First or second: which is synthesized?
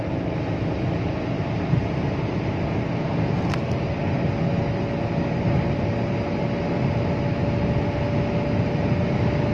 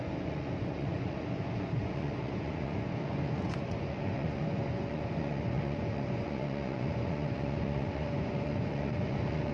second